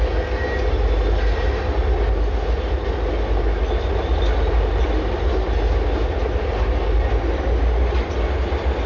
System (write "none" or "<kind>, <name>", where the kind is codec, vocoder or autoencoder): none